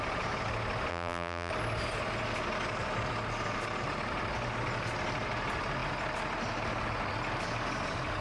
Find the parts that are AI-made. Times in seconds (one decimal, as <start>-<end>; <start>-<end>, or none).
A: 0.9-1.5